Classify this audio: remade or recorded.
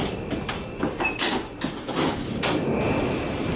recorded